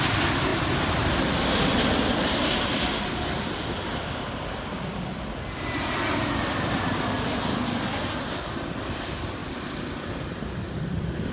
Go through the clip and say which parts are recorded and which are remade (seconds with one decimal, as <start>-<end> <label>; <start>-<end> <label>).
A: 0.0-11.3 recorded